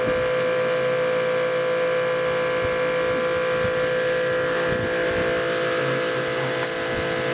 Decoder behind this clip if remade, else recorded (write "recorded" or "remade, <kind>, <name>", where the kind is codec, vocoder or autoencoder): recorded